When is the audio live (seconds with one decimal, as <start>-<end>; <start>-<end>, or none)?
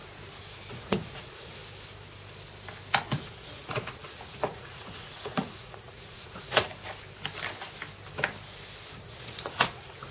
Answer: 0.0-0.7; 1.6-3.2; 6.7-9.0